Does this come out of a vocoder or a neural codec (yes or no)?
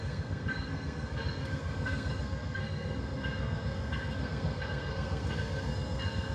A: yes